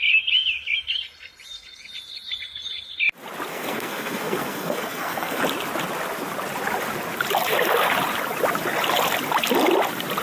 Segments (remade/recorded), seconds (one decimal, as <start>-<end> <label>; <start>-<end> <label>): 0.0-3.5 recorded; 3.5-5.4 remade; 5.4-10.2 recorded